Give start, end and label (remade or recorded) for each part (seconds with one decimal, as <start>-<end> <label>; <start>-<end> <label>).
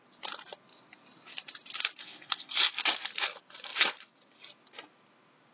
0.0-2.0 recorded; 2.0-2.6 remade; 2.6-5.5 recorded